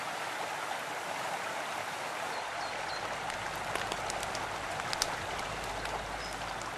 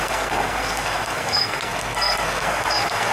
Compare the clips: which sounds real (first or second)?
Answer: first